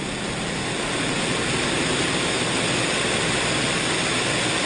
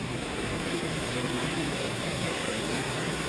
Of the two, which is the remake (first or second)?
second